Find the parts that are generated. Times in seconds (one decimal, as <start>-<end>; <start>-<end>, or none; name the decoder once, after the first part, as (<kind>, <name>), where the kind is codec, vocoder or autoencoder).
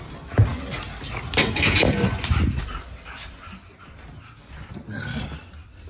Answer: none